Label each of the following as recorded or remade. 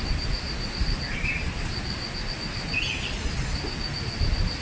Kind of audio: recorded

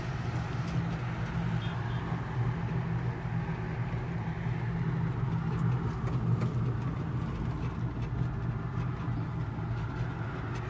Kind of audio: recorded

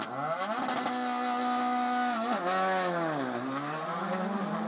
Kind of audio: recorded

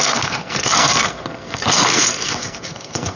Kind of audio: remade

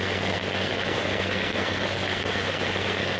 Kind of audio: remade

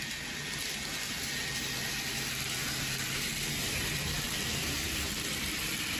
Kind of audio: recorded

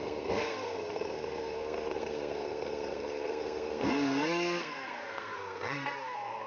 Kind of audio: remade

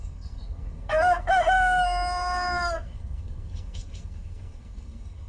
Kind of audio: remade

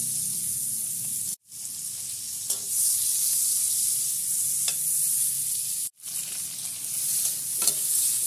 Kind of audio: recorded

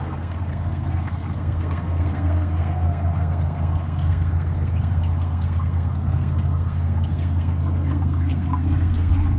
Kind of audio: remade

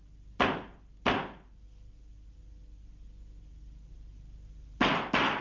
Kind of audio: recorded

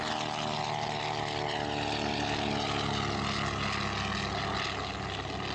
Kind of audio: recorded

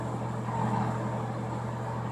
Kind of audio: recorded